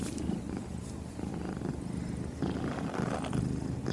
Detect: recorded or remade recorded